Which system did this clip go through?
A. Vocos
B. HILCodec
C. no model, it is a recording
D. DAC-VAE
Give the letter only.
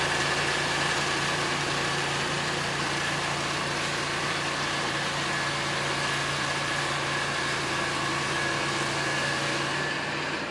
C